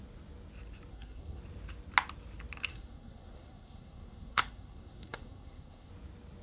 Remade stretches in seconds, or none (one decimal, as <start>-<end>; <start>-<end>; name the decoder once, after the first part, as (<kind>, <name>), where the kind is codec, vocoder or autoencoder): 0.9-1.4 (codec, SNAC); 2.7-5.9